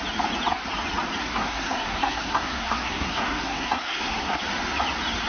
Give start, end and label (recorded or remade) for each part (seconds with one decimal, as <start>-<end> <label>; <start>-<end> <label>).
0.0-1.2 recorded; 1.2-4.4 remade; 4.4-5.3 recorded